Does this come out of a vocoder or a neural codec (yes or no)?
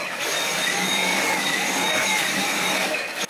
yes